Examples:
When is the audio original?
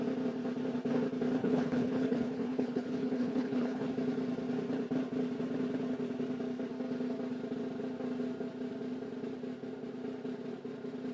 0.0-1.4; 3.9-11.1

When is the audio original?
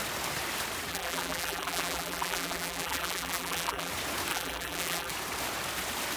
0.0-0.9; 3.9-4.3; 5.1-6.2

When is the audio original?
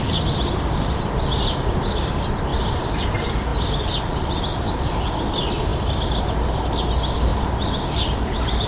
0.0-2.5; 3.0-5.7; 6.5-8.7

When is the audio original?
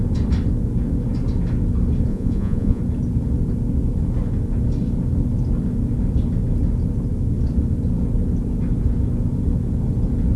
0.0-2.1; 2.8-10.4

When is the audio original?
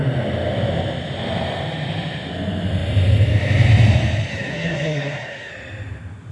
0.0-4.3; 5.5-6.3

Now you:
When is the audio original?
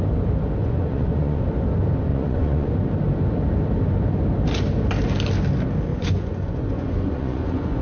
0.0-0.6; 1.4-2.1; 2.7-5.9